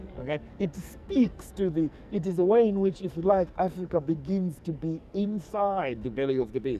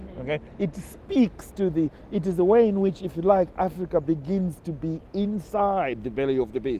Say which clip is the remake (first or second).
first